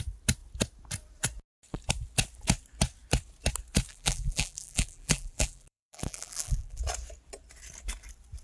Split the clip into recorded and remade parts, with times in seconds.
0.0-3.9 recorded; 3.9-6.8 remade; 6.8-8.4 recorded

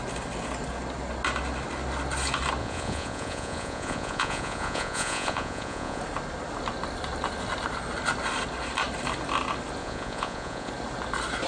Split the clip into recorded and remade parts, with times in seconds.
0.0-2.6 recorded; 2.6-6.0 remade; 6.0-9.8 recorded; 9.8-10.7 remade; 10.7-11.5 recorded

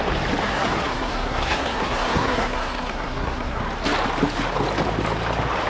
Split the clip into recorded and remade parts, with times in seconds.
0.0-0.4 recorded; 0.4-3.6 remade; 3.6-5.7 recorded

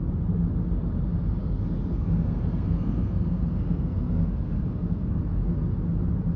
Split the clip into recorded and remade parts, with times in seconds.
0.0-1.4 recorded; 1.4-5.2 remade; 5.2-6.4 recorded

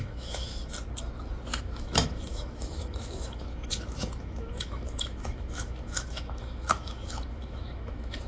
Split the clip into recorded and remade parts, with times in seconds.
0.0-0.7 remade; 0.7-1.6 recorded; 1.6-8.3 remade

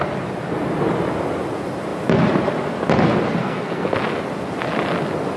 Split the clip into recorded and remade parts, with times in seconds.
0.0-3.4 recorded; 3.4-4.0 remade; 4.0-5.4 recorded

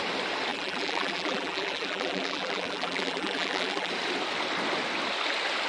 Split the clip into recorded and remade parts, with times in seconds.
0.0-0.5 recorded; 0.5-3.9 remade; 3.9-5.7 recorded

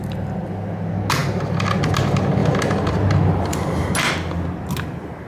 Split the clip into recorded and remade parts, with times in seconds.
0.0-5.3 recorded